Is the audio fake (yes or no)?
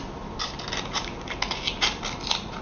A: no